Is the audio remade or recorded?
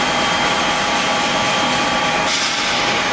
remade